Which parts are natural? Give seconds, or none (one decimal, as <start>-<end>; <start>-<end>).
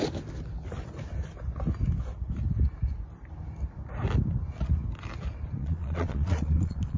0.0-5.6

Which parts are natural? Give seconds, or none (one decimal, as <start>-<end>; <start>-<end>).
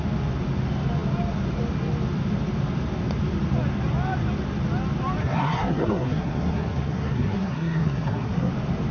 0.0-5.2; 8.5-8.9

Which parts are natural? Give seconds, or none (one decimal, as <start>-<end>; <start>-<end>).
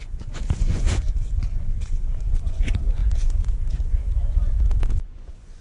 none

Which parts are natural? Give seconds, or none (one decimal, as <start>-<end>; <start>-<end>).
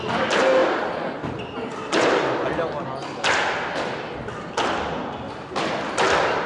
0.0-6.5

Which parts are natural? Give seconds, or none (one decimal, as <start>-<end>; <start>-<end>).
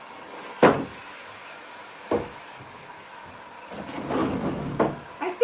0.0-0.9; 3.3-4.2; 4.7-5.4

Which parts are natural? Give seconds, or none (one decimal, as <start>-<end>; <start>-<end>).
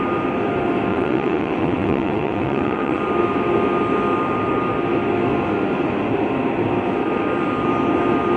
0.0-0.9; 3.0-8.4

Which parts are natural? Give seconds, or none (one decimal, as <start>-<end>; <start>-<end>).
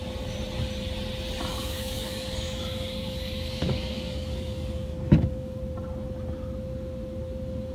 0.0-1.5; 5.6-7.7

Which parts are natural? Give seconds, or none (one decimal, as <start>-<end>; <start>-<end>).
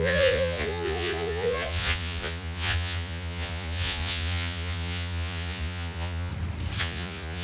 6.3-6.8